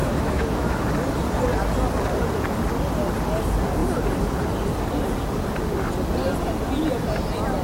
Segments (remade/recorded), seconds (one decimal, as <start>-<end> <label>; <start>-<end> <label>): 0.0-0.8 remade; 0.8-7.6 recorded